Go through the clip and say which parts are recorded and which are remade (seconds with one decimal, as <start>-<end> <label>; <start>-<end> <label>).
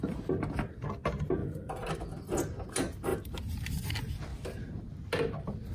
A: 0.0-1.4 recorded; 1.4-1.9 remade; 1.9-3.1 recorded; 3.1-3.9 remade; 3.9-4.3 recorded; 4.3-4.8 remade; 4.8-5.7 recorded